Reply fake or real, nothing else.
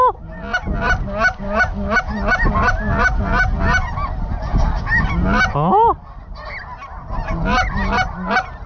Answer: real